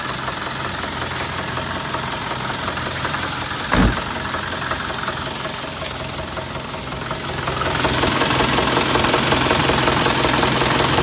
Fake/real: real